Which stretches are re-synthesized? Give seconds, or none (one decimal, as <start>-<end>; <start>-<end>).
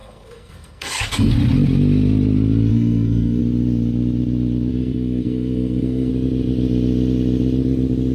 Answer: 0.0-1.3; 2.7-3.4; 4.7-6.1